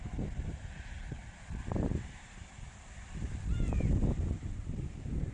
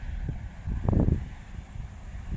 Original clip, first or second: second